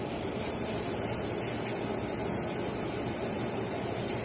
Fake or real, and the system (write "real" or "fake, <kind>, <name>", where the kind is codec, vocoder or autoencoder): real